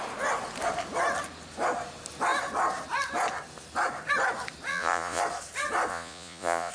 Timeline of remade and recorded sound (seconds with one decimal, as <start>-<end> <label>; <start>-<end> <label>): 0.0-4.7 recorded; 4.7-5.2 remade; 5.2-5.9 recorded; 5.9-6.7 remade